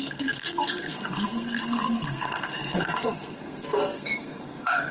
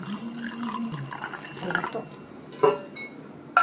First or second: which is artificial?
first